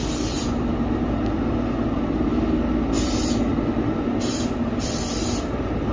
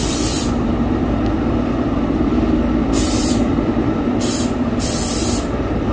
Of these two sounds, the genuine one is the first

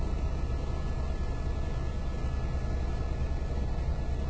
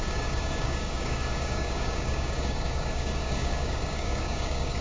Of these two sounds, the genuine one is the first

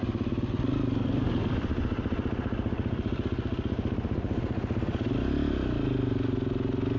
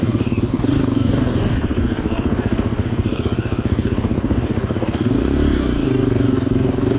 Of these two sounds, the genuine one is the first